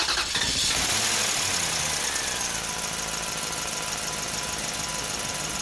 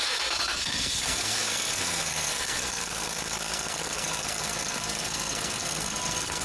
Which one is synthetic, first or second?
second